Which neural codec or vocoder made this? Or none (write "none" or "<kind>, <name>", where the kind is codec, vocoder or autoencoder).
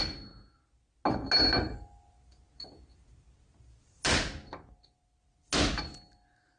none